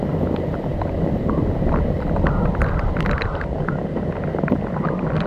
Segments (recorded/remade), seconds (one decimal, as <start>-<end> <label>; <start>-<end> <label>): 0.0-5.3 recorded